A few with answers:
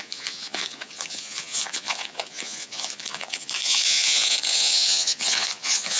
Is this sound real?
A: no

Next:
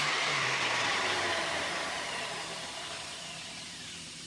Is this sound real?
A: no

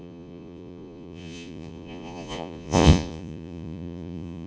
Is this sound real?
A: no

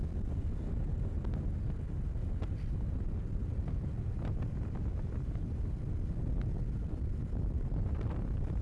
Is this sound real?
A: yes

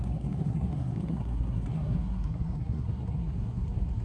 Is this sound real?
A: no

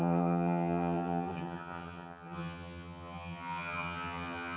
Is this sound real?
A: no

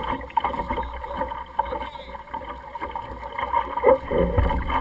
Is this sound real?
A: yes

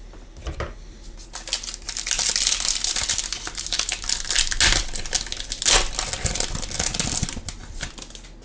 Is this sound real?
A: yes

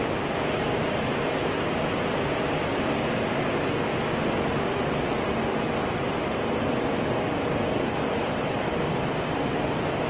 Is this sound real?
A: no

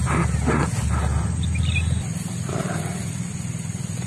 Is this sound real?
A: yes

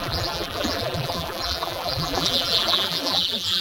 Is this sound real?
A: no